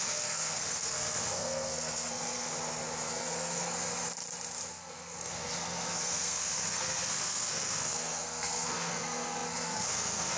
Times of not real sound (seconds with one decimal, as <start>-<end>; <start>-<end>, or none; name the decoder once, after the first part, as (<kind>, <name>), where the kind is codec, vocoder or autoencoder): 0.0-2.5 (codec, SNAC); 3.1-3.7; 4.7-10.4